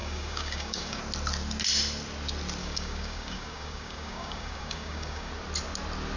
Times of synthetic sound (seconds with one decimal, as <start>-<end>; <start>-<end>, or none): 0.0-1.0; 2.6-5.3